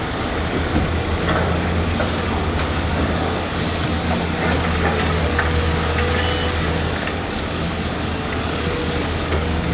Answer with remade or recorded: remade